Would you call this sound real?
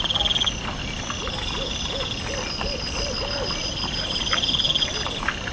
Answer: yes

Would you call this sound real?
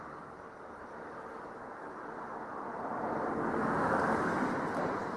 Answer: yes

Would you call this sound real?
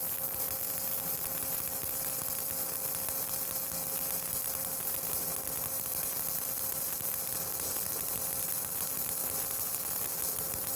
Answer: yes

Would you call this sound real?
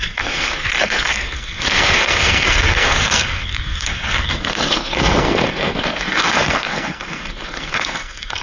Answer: no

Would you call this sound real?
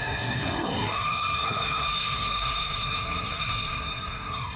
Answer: no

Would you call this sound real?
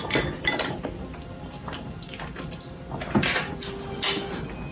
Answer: yes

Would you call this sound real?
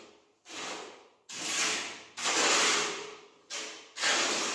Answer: yes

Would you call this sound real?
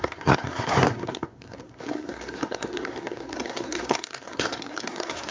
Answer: no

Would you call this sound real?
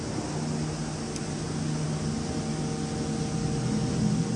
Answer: yes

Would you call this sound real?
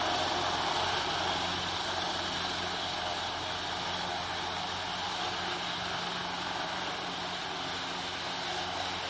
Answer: yes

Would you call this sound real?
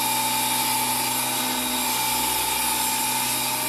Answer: yes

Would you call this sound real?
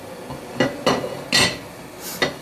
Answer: yes